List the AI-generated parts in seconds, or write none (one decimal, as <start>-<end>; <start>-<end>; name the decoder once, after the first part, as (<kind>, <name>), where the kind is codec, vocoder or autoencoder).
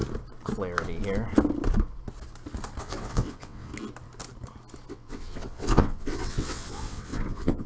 2.8-3.7 (vocoder, WaveNeXt); 4.9-7.7